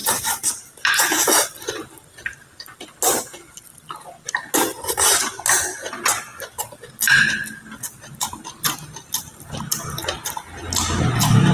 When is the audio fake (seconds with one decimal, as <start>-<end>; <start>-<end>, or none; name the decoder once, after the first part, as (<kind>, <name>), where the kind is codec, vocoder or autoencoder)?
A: none